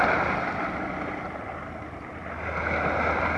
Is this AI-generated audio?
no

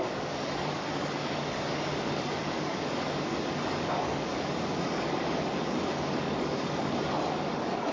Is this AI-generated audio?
yes